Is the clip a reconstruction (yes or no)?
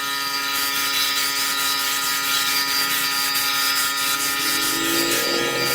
no